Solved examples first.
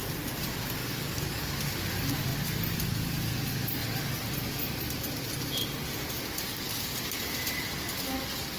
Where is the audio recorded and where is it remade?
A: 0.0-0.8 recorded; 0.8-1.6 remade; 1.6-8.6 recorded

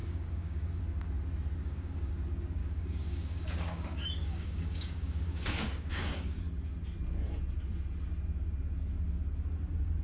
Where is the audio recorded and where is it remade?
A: 0.0-0.8 remade; 0.8-1.6 recorded; 1.6-2.1 remade; 2.1-2.6 recorded; 2.6-6.4 remade; 6.4-10.0 recorded

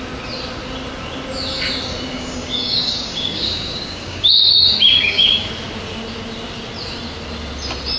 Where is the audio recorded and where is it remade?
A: 0.0-2.1 recorded; 2.1-5.5 remade; 5.5-8.0 recorded

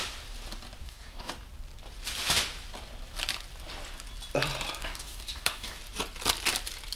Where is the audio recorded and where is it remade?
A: 0.0-0.8 recorded; 0.8-1.3 remade; 1.3-4.8 recorded; 4.8-5.8 remade; 5.8-7.0 recorded